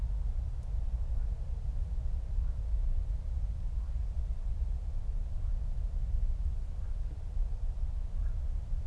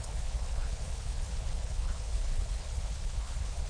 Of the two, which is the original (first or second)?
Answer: first